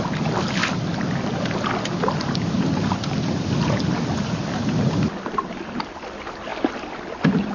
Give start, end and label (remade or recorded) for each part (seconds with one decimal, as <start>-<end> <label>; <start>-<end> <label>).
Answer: 0.0-7.5 recorded